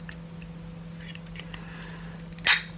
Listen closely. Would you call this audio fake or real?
real